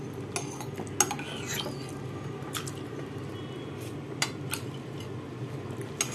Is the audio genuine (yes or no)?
yes